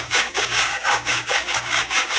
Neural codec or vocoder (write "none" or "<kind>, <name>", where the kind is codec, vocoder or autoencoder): codec, DAC